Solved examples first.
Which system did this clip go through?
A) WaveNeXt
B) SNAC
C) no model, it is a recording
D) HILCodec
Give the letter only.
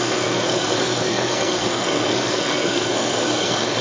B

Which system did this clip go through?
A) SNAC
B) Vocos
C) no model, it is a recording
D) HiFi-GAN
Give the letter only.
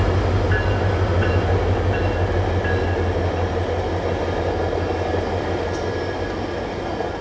C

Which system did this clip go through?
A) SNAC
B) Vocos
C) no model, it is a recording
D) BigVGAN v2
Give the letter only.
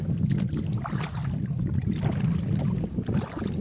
C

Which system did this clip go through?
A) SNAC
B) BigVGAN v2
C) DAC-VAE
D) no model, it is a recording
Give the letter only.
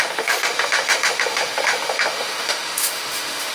C